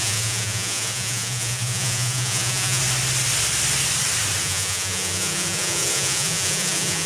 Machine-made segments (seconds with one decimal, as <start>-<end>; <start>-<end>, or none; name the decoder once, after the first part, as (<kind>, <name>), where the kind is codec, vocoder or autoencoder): 0.0-2.8 (vocoder, Vocos); 4.4-7.1